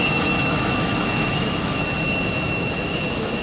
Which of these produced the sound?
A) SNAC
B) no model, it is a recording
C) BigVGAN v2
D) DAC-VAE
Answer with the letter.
D